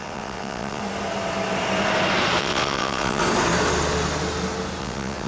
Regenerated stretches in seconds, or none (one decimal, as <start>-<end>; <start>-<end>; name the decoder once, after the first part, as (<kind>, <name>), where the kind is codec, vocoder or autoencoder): 0.0-0.8 (vocoder, WaveNeXt); 2.4-3.2; 4.8-5.3